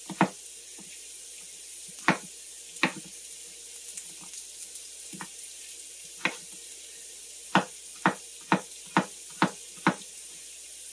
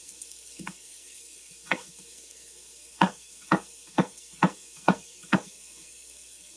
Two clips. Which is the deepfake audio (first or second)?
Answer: second